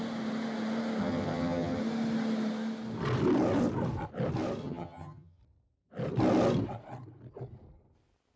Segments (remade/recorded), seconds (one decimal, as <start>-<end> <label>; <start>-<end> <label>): 0.0-1.0 recorded; 1.0-1.8 remade; 1.8-4.6 recorded; 4.6-5.4 remade; 5.4-8.4 recorded